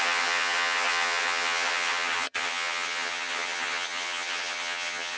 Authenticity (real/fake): fake